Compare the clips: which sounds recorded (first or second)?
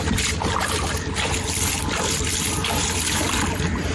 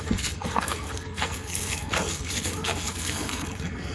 first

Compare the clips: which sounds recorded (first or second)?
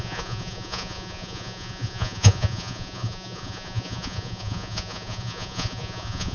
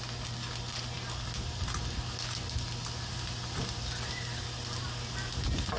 second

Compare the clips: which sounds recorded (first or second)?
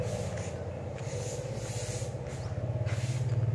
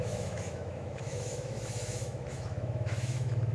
first